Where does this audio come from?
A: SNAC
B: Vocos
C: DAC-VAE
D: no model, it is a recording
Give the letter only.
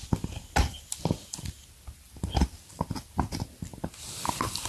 D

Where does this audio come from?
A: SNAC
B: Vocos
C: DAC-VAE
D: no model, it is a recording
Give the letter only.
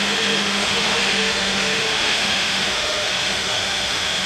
C